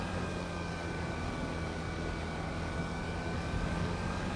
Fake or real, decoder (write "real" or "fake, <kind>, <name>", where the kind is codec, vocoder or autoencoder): fake, codec, DAC